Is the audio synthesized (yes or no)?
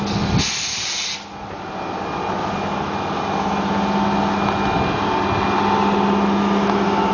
no